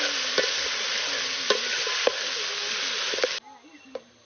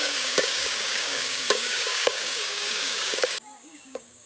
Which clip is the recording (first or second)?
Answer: first